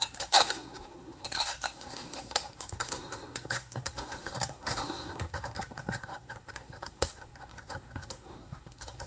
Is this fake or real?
fake